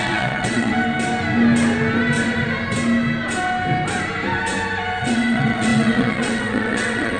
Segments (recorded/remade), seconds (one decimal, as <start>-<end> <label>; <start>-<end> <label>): 0.0-0.7 remade; 0.7-5.0 recorded; 5.0-7.2 remade